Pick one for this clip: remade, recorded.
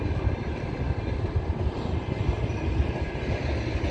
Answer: recorded